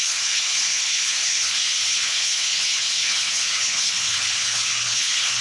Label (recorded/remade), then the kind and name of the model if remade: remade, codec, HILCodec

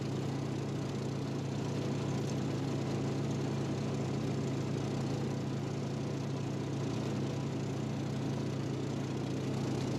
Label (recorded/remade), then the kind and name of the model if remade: recorded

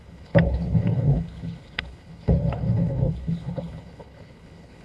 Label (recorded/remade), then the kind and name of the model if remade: remade, codec, HILCodec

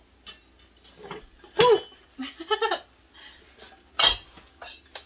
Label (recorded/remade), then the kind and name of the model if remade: recorded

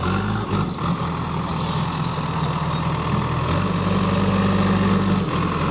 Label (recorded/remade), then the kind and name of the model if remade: recorded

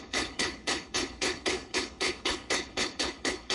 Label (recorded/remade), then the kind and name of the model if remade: remade, codec, HILCodec